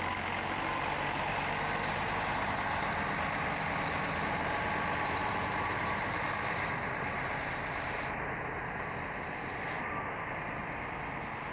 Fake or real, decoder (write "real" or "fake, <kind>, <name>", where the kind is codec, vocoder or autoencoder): real